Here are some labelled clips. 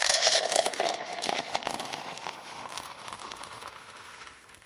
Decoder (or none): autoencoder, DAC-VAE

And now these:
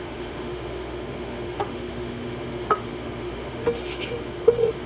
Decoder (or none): autoencoder, DAC-VAE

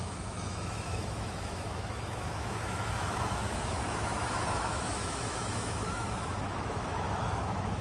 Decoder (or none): autoencoder, DAC-VAE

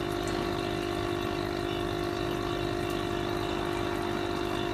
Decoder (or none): none